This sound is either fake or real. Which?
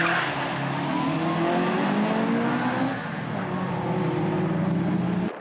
real